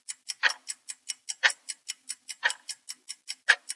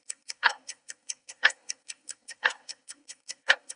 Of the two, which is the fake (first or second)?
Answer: second